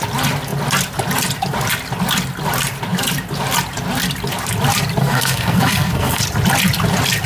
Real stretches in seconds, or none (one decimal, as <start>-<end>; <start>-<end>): 0.0-5.0; 6.2-7.3